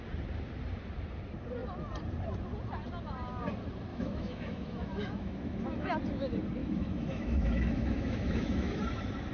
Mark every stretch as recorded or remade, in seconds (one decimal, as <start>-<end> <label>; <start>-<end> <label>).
0.0-3.9 recorded; 3.9-5.9 remade; 5.9-6.6 recorded; 6.6-8.8 remade; 8.8-9.3 recorded